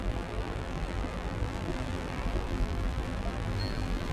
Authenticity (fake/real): fake